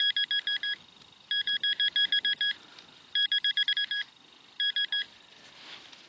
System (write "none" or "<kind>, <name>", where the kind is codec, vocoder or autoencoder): none